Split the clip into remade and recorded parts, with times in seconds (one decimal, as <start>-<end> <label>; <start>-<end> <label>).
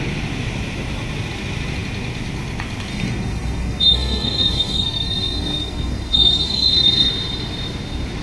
0.0-2.9 recorded; 2.9-7.1 remade; 7.1-8.2 recorded